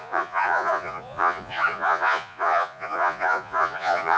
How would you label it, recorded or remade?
remade